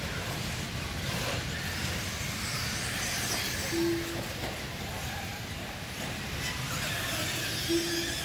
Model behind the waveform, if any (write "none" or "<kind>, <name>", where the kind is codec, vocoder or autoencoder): none